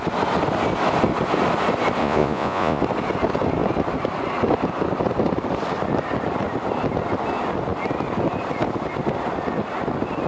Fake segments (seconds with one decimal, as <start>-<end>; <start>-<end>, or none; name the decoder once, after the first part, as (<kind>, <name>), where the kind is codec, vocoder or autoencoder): 2.0-2.8 (vocoder, Vocos)